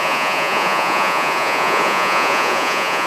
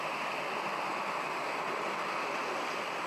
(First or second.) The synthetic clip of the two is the first